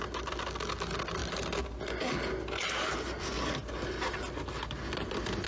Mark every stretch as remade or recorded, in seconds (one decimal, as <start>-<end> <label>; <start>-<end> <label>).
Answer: 0.0-5.5 recorded